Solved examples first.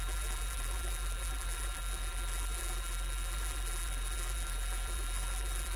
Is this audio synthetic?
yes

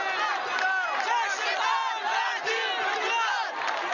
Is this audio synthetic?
no